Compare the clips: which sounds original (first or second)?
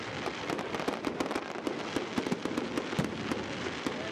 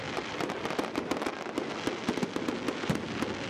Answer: second